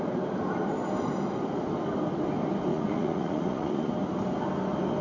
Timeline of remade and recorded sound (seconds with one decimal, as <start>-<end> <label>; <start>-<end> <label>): 0.0-2.7 recorded; 2.7-3.9 remade; 3.9-5.0 recorded